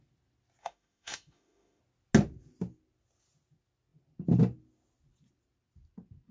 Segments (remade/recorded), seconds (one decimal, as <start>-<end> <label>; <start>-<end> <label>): 0.0-0.6 recorded; 0.6-1.8 remade; 1.8-6.3 recorded